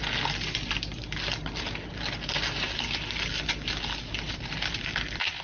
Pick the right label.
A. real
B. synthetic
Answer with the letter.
A